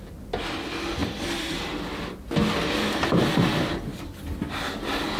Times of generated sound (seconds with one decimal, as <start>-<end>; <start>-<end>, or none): 1.0-1.6; 3.9-4.5